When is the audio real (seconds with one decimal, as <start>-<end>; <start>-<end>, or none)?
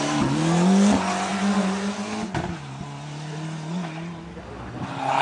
0.0-5.2